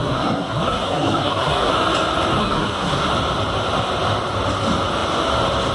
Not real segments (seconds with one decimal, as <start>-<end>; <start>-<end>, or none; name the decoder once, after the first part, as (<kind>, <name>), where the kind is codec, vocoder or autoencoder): 0.0-1.7 (codec, SNAC); 2.4-3.1